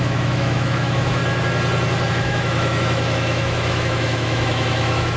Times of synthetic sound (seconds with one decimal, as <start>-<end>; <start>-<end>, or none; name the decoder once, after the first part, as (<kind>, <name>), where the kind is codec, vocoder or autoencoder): 0.0-1.2 (autoencoder, DAC-VAE); 2.1-5.2